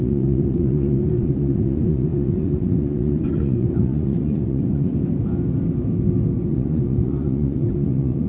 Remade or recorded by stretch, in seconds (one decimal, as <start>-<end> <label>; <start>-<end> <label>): 0.0-4.9 remade; 4.9-6.5 recorded; 6.5-8.3 remade